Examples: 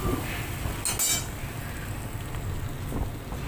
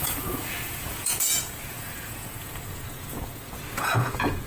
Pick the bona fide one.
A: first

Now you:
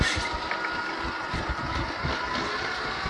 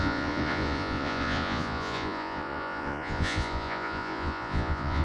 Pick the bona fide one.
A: first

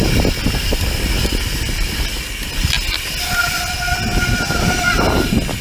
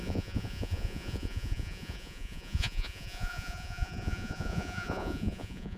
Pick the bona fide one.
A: first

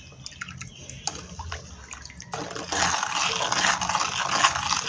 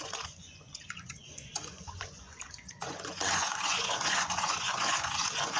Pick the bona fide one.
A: first